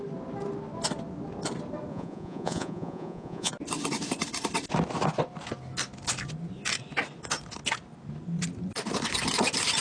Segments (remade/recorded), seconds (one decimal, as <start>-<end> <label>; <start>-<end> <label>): 0.0-1.9 recorded; 1.9-3.5 remade; 3.5-9.8 recorded